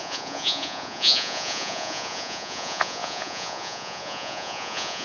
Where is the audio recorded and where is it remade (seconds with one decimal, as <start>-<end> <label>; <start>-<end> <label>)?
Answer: 0.0-5.0 remade